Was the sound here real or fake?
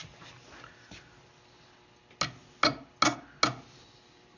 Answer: real